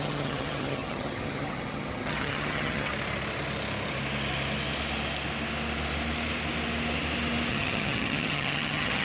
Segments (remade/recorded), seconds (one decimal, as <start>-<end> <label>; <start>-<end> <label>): 0.0-2.9 remade; 2.9-7.5 recorded; 7.5-9.0 remade